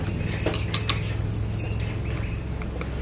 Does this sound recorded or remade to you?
recorded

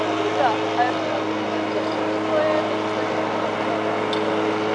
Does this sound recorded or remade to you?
recorded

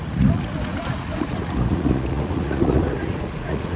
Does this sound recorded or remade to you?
remade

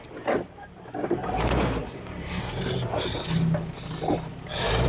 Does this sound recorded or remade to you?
recorded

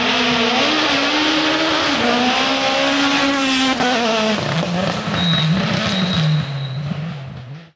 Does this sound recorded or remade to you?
recorded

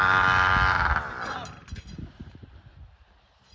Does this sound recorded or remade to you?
recorded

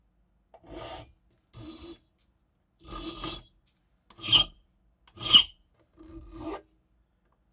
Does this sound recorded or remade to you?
recorded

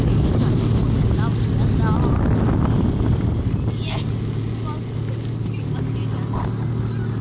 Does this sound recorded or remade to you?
recorded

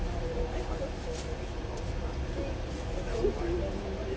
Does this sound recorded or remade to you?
recorded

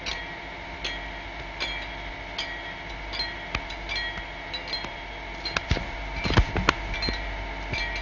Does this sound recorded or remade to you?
recorded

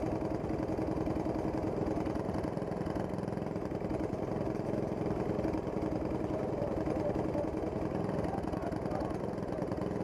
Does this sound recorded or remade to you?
recorded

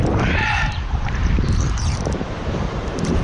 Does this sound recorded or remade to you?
remade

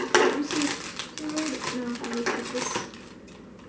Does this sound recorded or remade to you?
recorded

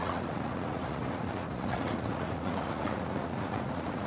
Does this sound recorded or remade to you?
remade